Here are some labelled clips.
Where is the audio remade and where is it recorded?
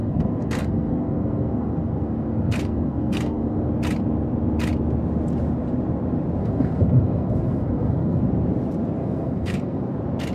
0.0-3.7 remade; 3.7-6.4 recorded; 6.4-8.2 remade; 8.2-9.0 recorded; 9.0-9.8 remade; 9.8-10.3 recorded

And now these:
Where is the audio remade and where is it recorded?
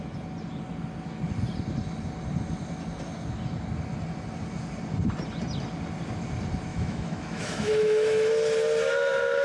0.0-6.7 recorded; 6.7-8.3 remade; 8.3-9.4 recorded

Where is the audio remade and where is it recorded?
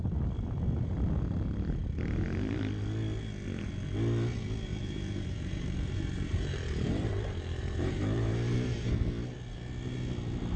0.0-4.7 recorded; 4.7-8.9 remade; 8.9-10.6 recorded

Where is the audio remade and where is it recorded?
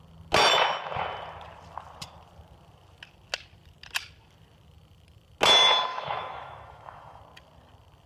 0.0-5.9 recorded; 5.9-7.2 remade; 7.2-8.1 recorded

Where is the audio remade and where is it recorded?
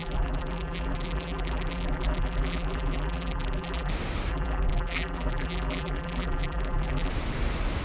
0.0-3.9 remade; 3.9-4.3 recorded; 4.3-7.1 remade; 7.1-7.8 recorded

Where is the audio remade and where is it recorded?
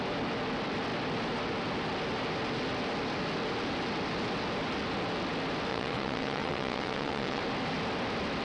0.0-5.7 recorded; 5.7-7.4 remade; 7.4-8.4 recorded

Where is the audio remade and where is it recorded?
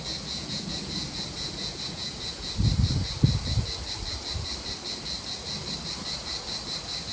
0.0-0.4 recorded; 0.4-2.5 remade; 2.5-7.1 recorded